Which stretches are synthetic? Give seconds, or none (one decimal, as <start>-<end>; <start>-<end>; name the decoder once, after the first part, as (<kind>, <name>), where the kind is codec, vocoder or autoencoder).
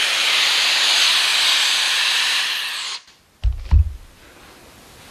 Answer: none